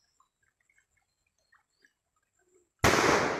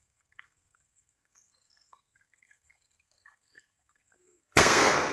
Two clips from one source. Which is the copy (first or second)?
second